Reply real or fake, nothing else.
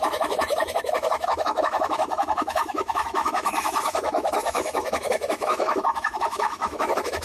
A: fake